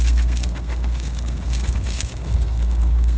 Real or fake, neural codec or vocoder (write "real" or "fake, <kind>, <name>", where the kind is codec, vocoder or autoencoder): fake, codec, SNAC